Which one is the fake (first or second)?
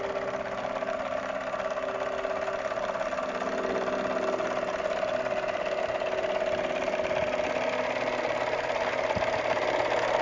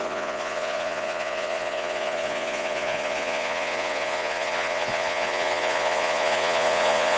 second